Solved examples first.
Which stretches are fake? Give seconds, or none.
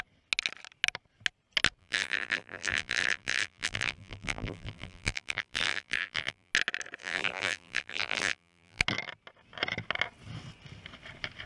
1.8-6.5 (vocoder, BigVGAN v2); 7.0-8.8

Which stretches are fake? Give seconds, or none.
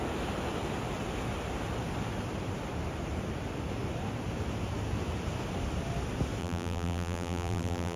6.4-8.0 (vocoder, BigVGAN v2)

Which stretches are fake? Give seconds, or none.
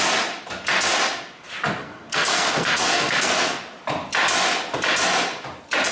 1.8-3.6 (codec, SNAC)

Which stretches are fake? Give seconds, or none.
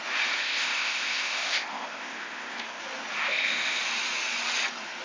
0.4-2.8 (codec, ZipCodec); 3.2-3.8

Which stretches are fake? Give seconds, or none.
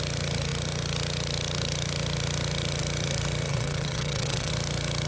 3.5-4.5 (vocoder, WaveNeXt)